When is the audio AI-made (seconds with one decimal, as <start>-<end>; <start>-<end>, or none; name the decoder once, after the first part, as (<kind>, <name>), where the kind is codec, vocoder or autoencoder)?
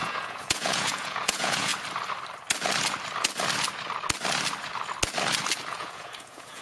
0.0-1.7 (vocoder, Vocos); 5.7-6.6